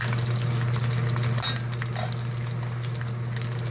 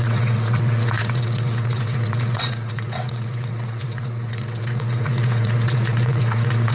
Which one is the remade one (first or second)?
second